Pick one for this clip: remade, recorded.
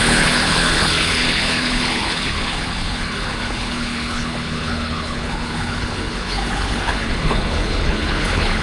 remade